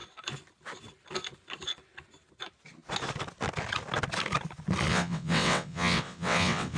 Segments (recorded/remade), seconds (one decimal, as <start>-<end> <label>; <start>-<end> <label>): 0.0-4.9 recorded; 4.9-6.8 remade